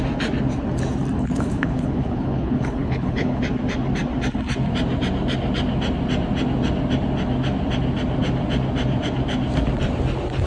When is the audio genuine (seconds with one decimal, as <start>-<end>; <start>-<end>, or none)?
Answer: 0.0-1.2; 3.4-10.5